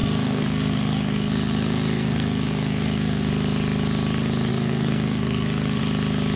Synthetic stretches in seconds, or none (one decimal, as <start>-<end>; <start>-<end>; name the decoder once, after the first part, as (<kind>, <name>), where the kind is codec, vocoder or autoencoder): 0.0-3.3 (codec, SNAC); 4.5-5.8